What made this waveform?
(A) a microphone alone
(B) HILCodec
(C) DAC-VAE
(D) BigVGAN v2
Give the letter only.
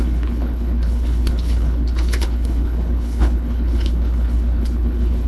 B